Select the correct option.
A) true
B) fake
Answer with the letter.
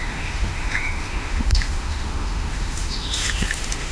B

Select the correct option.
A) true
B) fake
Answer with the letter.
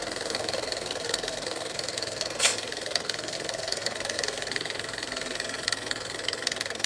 B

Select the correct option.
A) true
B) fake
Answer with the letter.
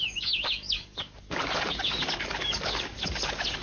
B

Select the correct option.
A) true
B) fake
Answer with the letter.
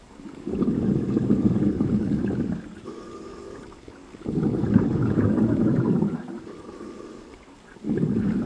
B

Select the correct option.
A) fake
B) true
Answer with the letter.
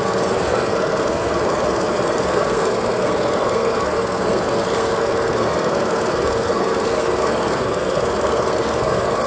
A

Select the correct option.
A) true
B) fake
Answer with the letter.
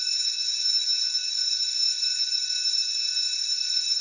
A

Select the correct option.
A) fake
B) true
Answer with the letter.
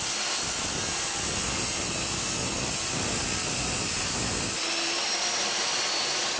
B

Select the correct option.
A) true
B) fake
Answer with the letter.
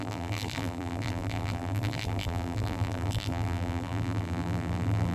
B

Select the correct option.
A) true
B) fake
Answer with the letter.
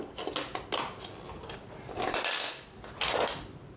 A